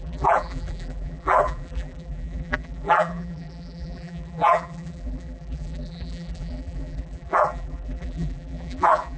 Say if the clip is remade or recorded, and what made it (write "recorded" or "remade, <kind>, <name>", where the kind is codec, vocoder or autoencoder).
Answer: remade, vocoder, BigVGAN v2